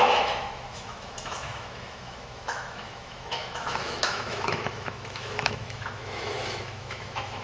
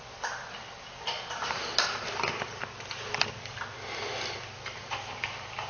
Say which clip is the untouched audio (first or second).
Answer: second